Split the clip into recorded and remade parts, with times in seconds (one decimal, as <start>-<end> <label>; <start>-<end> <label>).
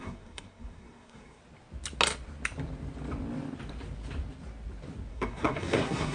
0.0-1.4 remade; 1.4-5.1 recorded; 5.1-6.1 remade